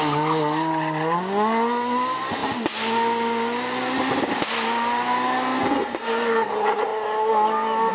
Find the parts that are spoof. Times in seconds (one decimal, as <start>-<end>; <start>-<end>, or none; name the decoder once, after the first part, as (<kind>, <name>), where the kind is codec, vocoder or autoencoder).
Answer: 5.6-6.5 (codec, SNAC)

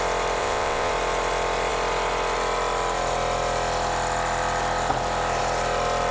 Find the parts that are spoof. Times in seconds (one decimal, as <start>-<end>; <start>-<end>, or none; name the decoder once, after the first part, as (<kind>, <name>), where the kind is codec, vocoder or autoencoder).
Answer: 0.4-0.9 (vocoder, WaveNeXt)

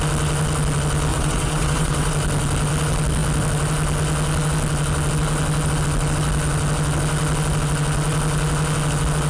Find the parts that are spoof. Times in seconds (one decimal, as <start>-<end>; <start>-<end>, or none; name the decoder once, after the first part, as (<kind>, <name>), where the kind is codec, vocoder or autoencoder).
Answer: 1.1-2.1 (vocoder, WaveNeXt)

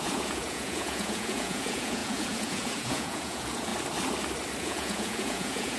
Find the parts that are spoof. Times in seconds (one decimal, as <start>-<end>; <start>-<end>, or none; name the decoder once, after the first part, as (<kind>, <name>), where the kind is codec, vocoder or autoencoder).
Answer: 0.0-3.7 (vocoder, Vocos); 4.6-5.8

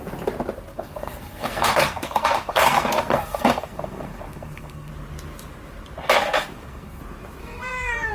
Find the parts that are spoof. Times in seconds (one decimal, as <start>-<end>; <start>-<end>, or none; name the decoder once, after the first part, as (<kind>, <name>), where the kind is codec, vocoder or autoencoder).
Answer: 0.7-4.9 (codec, SNAC); 6.2-7.0; 7.4-8.1

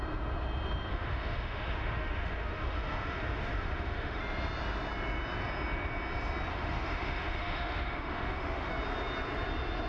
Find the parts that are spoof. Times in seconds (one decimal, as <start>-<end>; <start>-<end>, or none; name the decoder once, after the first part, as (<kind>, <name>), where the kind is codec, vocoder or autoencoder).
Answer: 0.9-4.2 (autoencoder, DAC-VAE); 6.5-8.7